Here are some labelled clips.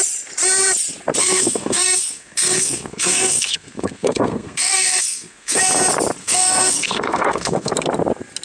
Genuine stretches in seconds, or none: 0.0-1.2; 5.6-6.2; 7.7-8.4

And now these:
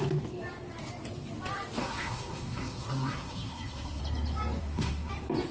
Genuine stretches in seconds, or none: 0.0-1.8; 4.0-4.6; 5.1-5.5

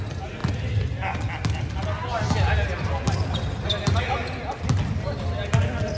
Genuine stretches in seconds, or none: 0.0-6.0